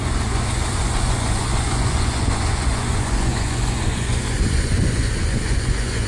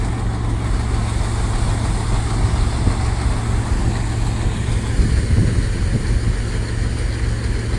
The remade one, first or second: first